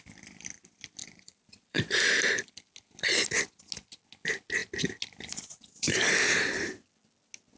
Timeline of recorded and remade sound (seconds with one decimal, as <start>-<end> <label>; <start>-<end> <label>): 0.0-1.0 recorded; 1.0-2.5 remade; 2.5-7.6 recorded